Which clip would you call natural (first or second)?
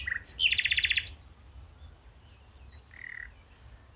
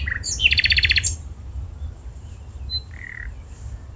first